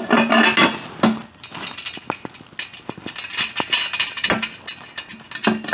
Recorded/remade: recorded